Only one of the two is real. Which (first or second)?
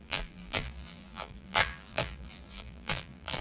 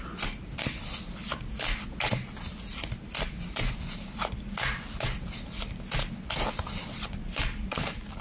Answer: second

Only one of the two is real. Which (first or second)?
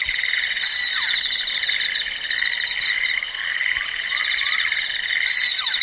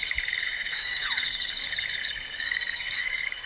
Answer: first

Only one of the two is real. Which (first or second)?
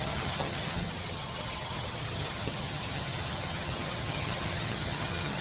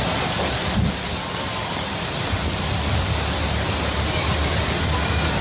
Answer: second